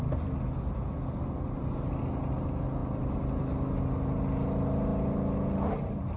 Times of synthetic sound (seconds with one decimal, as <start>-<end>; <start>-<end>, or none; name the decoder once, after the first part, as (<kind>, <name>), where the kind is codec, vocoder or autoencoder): none